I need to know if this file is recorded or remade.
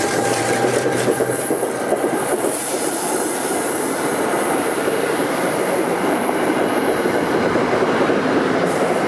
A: remade